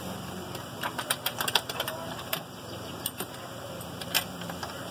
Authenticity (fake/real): fake